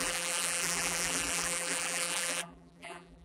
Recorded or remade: remade